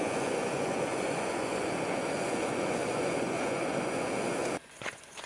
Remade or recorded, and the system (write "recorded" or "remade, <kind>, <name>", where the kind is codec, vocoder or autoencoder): remade, vocoder, Vocos